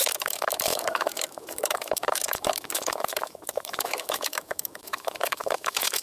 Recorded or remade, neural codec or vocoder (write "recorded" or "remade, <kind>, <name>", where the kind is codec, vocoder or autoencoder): remade, autoencoder, DAC-VAE